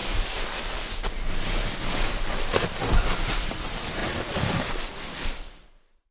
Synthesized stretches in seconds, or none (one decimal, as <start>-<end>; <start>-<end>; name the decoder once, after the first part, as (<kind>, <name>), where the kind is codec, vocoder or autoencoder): 3.3-6.1 (vocoder, BigVGAN v2)